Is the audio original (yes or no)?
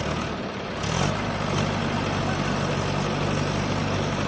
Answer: yes